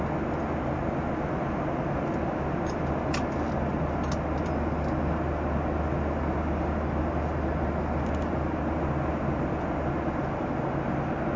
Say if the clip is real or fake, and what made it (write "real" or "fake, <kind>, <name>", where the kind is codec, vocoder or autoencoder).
real